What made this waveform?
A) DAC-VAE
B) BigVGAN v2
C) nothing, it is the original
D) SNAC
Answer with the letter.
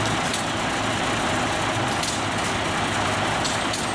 C